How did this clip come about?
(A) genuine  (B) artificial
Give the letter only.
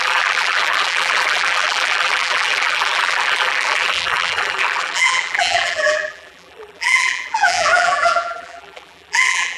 B